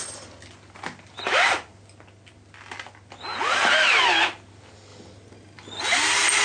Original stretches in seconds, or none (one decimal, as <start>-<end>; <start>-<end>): 0.0-6.4